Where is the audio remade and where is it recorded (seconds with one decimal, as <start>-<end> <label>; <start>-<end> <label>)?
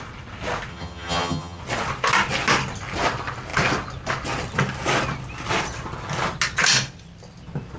0.0-0.7 recorded; 0.7-1.6 remade; 1.6-7.8 recorded